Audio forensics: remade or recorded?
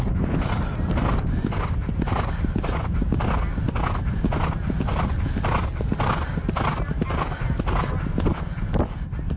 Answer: recorded